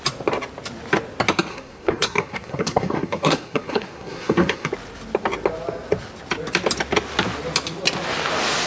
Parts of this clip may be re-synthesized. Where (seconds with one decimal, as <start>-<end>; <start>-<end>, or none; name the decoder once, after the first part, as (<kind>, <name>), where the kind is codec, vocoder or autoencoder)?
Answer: 1.5-4.7 (codec, SNAC)